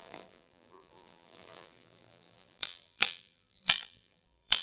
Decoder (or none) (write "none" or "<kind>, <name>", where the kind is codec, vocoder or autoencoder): vocoder, BigVGAN v2